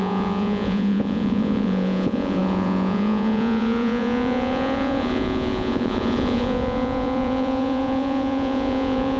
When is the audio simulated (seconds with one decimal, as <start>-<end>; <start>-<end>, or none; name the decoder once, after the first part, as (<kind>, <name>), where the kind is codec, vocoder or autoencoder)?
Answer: 0.0-9.2 (vocoder, Vocos)

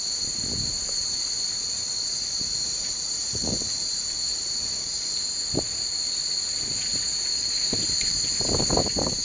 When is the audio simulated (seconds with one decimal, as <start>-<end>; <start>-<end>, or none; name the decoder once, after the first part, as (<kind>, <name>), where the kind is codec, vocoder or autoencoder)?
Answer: 2.5-3.6 (vocoder, Vocos); 6.9-7.7

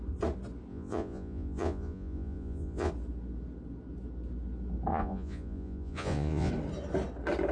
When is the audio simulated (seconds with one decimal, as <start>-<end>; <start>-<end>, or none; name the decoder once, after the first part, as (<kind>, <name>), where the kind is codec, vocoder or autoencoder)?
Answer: 0.7-2.9 (vocoder, Vocos); 4.9-6.5

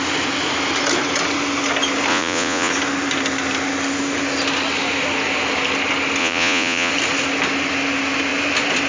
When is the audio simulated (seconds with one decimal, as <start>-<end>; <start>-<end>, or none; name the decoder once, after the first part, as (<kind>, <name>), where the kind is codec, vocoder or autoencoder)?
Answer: 2.1-2.7 (vocoder, Vocos); 6.2-6.9

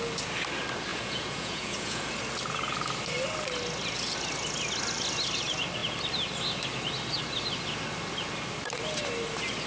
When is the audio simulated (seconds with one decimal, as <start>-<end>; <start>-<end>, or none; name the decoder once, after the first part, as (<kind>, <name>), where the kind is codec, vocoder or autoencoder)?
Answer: 0.9-2.1 (vocoder, Vocos)

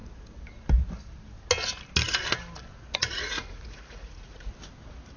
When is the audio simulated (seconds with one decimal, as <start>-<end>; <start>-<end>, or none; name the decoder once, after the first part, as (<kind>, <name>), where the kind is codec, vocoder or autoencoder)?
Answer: 3.0-4.5 (vocoder, Vocos)

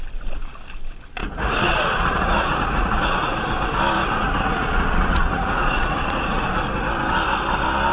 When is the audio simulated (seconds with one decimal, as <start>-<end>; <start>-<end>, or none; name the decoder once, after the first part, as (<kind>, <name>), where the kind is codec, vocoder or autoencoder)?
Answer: 1.2-3.5 (vocoder, Vocos); 4.0-6.6